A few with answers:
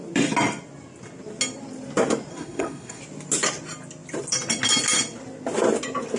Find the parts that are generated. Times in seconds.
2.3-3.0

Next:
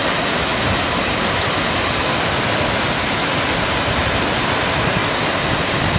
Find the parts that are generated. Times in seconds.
none

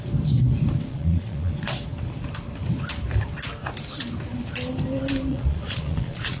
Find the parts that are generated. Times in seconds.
0.9-1.5; 5.3-6.4

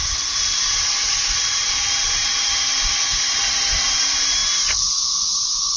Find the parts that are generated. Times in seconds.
0.0-4.4

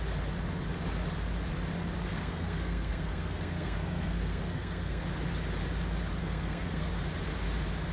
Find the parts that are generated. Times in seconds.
2.1-5.0; 6.2-6.9

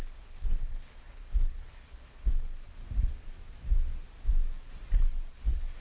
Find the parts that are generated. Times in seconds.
0.0-2.8; 5.3-5.8

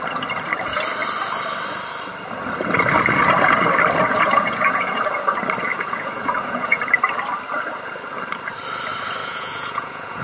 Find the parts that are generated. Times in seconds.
4.1-5.0; 5.7-6.8; 9.2-10.2

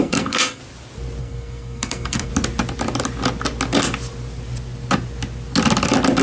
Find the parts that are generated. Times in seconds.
0.0-0.6; 1.2-2.3